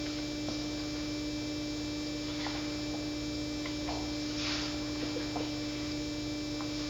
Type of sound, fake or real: real